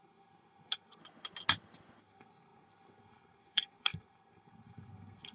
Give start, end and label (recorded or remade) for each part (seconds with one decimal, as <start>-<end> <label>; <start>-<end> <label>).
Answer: 0.0-1.0 remade; 1.0-2.0 recorded; 2.0-5.3 remade